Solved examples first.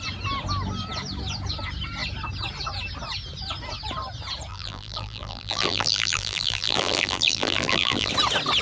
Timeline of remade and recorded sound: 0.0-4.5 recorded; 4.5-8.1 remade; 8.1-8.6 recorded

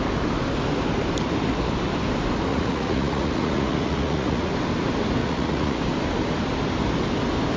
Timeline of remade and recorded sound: 0.0-2.5 recorded; 2.5-4.5 remade; 4.5-5.2 recorded; 5.2-5.8 remade; 5.8-7.6 recorded

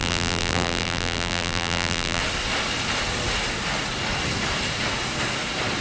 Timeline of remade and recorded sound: 0.0-2.2 remade; 2.2-5.8 recorded